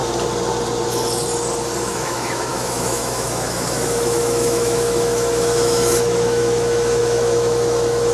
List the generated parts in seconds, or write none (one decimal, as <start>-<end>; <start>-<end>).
1.8-8.1